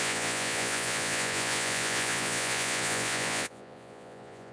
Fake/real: fake